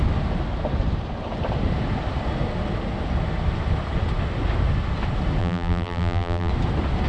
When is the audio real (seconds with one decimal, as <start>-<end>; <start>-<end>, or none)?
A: 0.0-5.4; 6.5-7.1